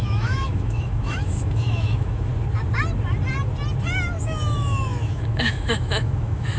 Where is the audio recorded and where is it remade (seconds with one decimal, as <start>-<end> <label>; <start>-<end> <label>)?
0.0-2.3 remade; 2.3-4.2 recorded; 4.2-6.6 remade